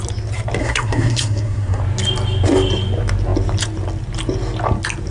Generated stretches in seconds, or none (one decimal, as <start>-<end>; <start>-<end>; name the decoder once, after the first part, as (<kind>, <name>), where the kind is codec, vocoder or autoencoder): 0.6-1.8 (codec, SNAC)